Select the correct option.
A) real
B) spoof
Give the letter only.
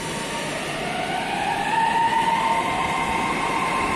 A